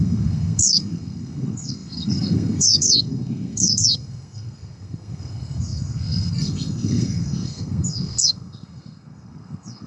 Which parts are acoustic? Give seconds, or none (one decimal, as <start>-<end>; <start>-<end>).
none